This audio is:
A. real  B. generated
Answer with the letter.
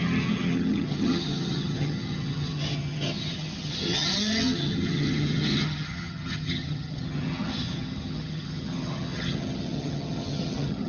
B